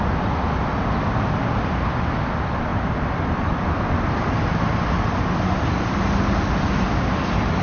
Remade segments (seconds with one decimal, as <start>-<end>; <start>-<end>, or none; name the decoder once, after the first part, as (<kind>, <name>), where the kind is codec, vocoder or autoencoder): none